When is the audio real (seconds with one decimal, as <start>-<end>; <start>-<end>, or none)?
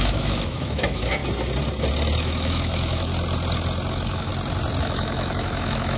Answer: 1.2-2.2; 3.1-3.9; 4.3-4.8